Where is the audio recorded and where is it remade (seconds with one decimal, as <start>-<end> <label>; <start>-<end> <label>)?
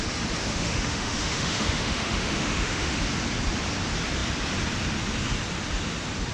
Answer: 0.0-0.4 recorded; 0.4-3.0 remade; 3.0-6.3 recorded